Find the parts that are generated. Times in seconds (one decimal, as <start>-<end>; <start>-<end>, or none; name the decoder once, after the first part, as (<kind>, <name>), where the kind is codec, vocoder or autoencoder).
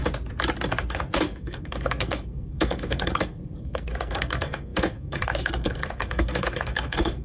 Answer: 0.8-7.2 (codec, SNAC)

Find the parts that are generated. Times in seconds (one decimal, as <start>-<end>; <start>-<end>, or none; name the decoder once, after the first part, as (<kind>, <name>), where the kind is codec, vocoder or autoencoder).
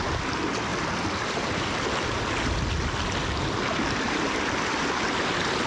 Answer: none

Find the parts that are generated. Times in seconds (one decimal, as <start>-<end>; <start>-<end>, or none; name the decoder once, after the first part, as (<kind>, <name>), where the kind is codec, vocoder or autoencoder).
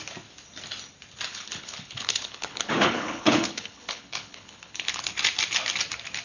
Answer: 1.3-5.0 (codec, HILCodec)